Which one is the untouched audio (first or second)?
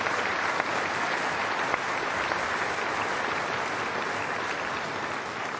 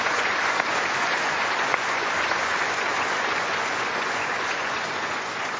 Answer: first